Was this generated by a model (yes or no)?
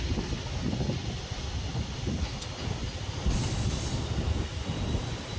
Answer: no